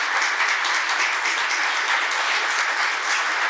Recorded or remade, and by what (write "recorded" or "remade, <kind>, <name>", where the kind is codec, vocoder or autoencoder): recorded